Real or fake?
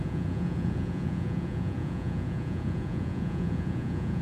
fake